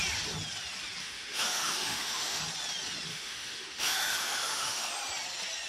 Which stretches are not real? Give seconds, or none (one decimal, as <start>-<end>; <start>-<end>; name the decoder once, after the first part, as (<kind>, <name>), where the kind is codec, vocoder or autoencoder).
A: 1.0-2.4 (autoencoder, DAC-VAE); 3.1-4.9